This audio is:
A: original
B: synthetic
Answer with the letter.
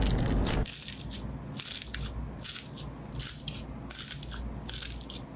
A